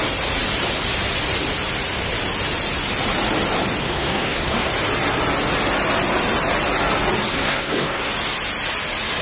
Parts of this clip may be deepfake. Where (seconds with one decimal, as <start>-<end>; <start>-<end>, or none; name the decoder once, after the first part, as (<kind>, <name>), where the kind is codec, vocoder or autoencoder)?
3.8-4.7 (codec, SNAC); 7.3-8.1